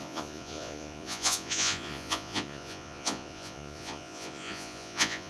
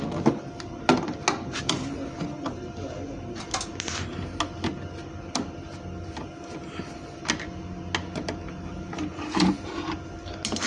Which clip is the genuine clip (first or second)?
second